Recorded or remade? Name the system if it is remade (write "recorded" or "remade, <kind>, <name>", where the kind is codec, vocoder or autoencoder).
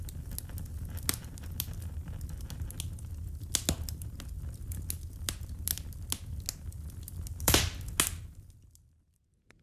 recorded